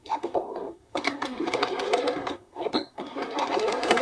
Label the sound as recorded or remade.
remade